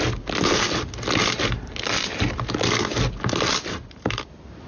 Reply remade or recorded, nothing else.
recorded